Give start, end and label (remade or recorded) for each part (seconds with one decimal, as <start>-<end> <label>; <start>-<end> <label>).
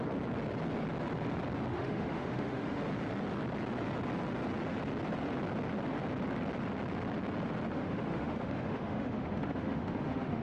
0.0-1.7 recorded; 1.7-2.8 remade; 2.8-7.7 recorded; 7.7-10.4 remade